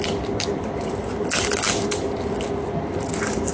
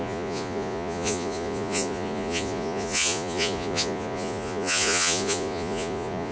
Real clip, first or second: first